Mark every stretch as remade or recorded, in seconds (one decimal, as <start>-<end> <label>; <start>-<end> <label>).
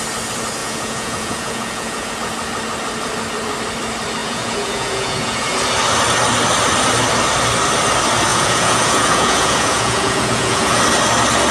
0.0-0.6 recorded; 0.6-2.1 remade; 2.1-4.2 recorded; 4.2-5.6 remade; 5.6-8.3 recorded; 8.3-10.8 remade; 10.8-11.5 recorded